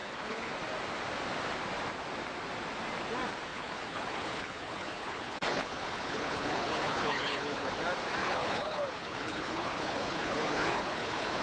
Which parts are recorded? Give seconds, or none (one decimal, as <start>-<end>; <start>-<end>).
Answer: 0.5-3.5; 7.7-8.2